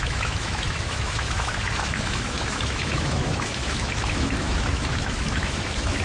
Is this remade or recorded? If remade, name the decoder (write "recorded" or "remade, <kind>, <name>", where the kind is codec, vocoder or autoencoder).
remade, autoencoder, DAC-VAE